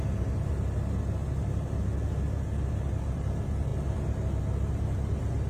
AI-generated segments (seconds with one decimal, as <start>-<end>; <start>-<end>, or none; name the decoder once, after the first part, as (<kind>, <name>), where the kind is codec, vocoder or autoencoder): none